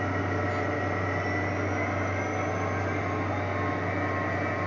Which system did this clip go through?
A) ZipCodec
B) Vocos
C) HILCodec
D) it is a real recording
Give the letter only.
D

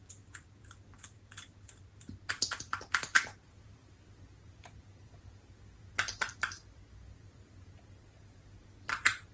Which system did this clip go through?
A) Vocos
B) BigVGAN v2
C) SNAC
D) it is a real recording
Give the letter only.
B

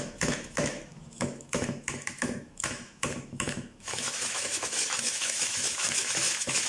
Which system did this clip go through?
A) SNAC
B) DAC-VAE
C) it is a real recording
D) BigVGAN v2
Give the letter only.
B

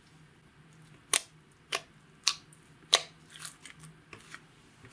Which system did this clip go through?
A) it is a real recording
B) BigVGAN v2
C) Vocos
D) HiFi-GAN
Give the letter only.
A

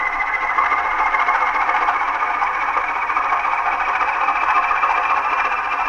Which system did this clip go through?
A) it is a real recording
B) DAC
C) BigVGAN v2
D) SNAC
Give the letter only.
C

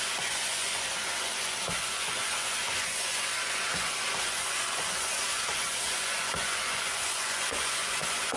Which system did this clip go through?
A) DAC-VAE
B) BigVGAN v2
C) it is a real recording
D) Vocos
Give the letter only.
D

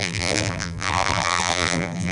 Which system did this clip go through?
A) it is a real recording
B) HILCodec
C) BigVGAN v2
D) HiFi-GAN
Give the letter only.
C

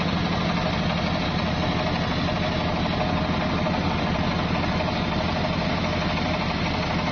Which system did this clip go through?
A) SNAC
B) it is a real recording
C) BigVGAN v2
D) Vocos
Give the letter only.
B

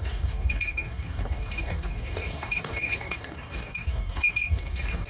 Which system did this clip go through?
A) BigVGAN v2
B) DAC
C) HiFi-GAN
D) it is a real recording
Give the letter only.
B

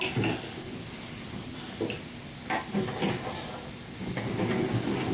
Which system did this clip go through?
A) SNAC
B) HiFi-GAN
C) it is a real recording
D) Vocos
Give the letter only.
C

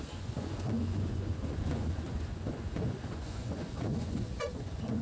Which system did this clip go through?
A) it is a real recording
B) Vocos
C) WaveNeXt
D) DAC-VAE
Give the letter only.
B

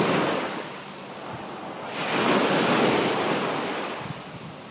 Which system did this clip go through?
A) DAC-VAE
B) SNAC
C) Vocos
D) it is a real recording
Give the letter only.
D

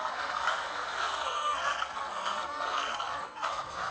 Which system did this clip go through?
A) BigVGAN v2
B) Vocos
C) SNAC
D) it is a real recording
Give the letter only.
C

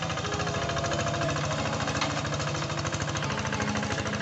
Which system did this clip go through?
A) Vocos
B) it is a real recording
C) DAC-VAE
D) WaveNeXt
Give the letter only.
B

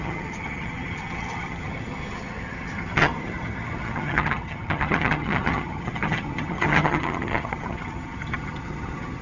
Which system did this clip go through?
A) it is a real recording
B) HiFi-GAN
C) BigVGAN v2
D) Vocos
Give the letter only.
B